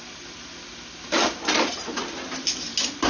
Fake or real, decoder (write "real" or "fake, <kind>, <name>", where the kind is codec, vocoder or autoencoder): real